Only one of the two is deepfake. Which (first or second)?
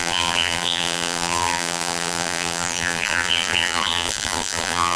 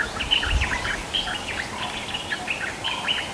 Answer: first